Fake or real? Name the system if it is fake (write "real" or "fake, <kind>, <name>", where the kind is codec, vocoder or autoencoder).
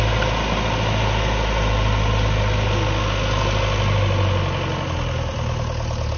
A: real